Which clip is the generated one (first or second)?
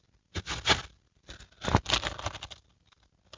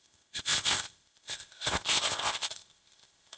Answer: second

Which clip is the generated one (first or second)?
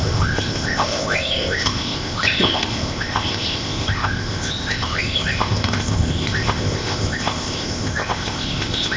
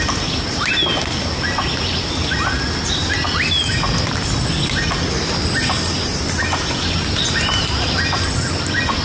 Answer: first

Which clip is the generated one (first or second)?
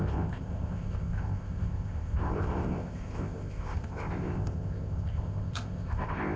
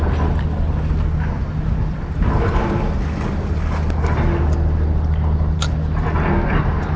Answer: first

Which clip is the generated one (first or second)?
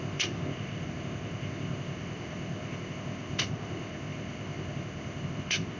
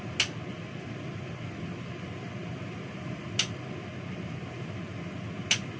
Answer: first